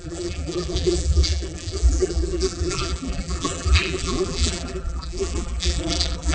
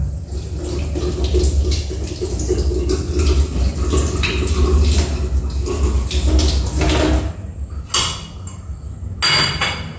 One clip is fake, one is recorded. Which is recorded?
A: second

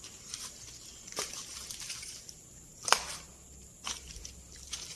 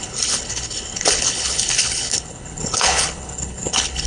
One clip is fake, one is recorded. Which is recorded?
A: first